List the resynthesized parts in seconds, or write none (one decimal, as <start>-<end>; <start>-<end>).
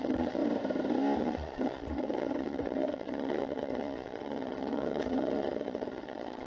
0.0-0.4; 1.2-6.5